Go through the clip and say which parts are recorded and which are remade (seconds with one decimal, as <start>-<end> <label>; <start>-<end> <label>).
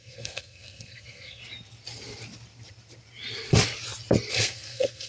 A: 0.0-1.4 remade; 1.4-4.3 recorded; 4.3-5.1 remade